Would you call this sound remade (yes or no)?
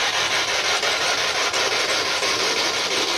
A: yes